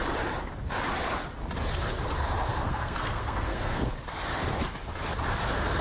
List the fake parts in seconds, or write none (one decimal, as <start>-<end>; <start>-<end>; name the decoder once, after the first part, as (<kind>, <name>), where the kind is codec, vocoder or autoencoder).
2.5-3.9 (codec, SNAC)